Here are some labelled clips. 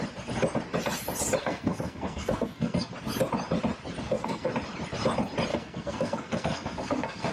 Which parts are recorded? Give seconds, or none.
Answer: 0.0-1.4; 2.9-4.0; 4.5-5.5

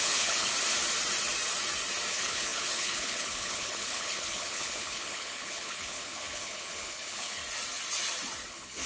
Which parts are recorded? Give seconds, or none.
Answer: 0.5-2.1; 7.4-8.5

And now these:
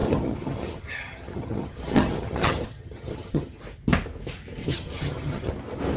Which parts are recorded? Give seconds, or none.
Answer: 3.6-4.6; 5.5-6.0

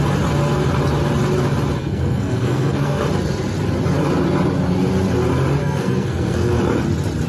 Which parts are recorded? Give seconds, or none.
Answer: 0.0-1.8; 3.0-5.6; 6.6-7.3